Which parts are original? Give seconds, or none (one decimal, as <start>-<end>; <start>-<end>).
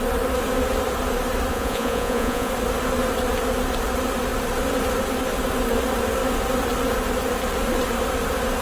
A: 0.0-1.5; 2.5-8.6